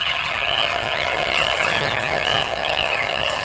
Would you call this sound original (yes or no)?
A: no